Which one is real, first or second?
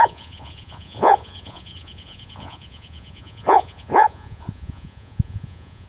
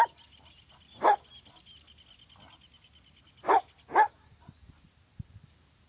second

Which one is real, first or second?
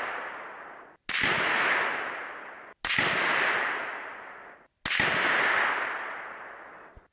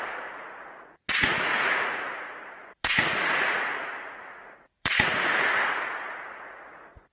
first